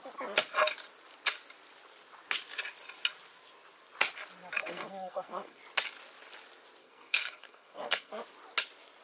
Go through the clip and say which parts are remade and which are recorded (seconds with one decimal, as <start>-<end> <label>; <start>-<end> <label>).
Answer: 0.0-4.6 recorded; 4.6-5.6 remade; 5.6-6.8 recorded; 6.8-8.1 remade; 8.1-9.0 recorded